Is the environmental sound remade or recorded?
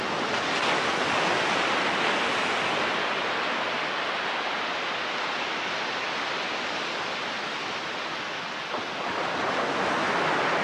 recorded